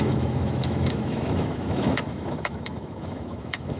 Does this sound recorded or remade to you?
remade